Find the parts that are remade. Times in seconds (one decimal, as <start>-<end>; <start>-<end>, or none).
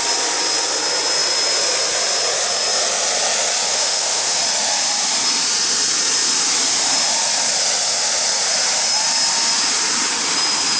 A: 3.7-4.4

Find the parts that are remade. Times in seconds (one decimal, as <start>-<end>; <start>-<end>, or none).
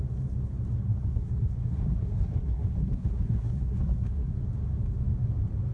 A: 0.9-4.3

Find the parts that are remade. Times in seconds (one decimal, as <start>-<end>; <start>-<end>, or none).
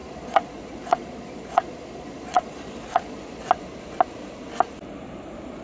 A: 0.0-3.4